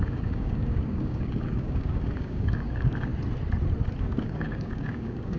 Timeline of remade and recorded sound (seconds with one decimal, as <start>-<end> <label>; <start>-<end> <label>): 0.0-3.1 remade; 3.1-4.0 recorded; 4.0-5.4 remade